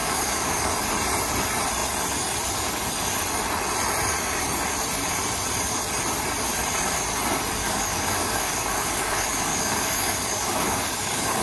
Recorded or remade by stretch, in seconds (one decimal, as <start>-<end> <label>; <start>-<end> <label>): 0.0-0.7 remade; 0.7-7.6 recorded; 7.6-11.4 remade